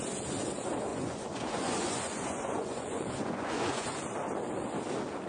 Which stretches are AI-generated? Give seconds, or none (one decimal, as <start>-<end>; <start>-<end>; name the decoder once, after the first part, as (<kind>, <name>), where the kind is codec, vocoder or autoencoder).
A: 0.9-4.0 (vocoder, Vocos)